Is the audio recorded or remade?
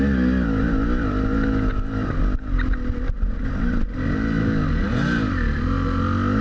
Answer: recorded